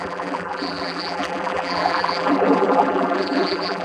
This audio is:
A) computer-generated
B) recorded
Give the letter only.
A